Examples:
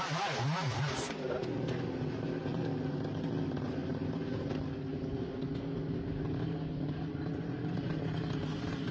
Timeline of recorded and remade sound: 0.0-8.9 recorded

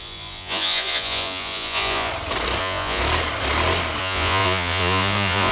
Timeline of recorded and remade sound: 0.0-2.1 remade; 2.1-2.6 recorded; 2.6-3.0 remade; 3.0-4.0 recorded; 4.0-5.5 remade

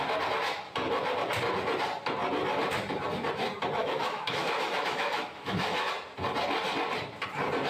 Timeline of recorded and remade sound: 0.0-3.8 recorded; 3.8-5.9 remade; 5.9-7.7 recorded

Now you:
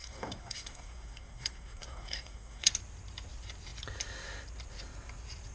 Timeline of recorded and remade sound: 0.0-2.7 remade; 2.7-5.5 recorded